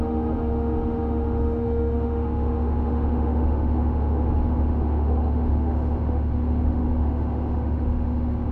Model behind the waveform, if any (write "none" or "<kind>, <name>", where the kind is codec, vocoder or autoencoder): autoencoder, DAC-VAE